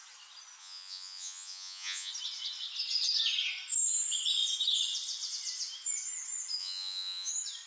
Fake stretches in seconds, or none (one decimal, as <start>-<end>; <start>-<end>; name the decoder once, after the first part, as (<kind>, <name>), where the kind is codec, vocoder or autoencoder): 0.6-2.1 (vocoder, Vocos); 6.6-7.3